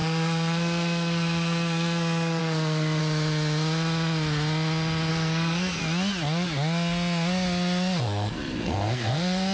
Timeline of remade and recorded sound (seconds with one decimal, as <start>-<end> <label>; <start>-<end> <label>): 0.0-3.0 remade; 3.0-5.1 recorded; 5.1-5.8 remade; 5.8-8.0 recorded; 8.0-9.5 remade